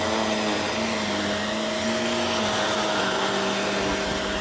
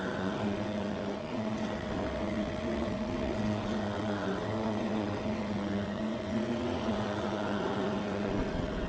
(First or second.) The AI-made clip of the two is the second